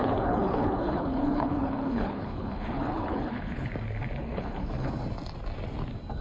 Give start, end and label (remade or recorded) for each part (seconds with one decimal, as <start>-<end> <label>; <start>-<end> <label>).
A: 0.0-3.7 remade; 3.7-4.2 recorded; 4.2-4.9 remade; 4.9-6.2 recorded